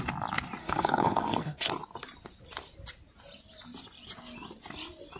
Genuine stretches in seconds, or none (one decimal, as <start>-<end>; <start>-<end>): 0.0-0.6; 1.7-5.2